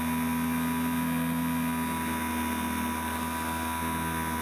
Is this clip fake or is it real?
real